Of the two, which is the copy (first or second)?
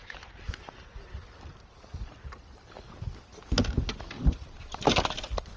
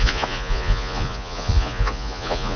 second